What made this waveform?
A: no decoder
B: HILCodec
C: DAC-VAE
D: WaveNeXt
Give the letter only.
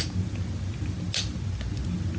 A